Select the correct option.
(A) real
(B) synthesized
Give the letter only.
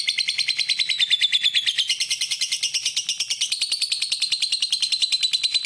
A